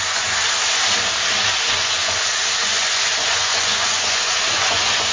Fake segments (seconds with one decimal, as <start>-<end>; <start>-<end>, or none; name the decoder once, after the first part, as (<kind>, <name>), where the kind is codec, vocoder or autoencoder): 0.0-0.4 (vocoder, Vocos); 1.6-5.1

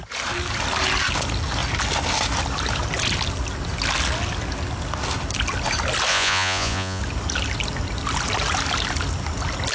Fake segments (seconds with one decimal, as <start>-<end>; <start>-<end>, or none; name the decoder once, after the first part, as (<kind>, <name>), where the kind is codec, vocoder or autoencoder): 6.1-7.0 (vocoder, Vocos)

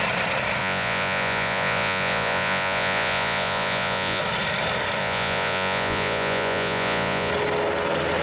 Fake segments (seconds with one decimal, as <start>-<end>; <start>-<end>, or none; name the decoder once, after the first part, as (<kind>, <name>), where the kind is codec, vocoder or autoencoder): 0.6-4.2 (vocoder, Vocos); 5.0-7.3

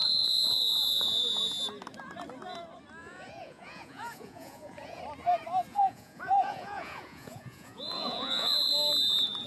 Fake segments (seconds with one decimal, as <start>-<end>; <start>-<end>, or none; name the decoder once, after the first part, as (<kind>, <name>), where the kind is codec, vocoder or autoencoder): 0.0-1.2 (vocoder, Vocos); 3.0-5.0; 5.7-8.7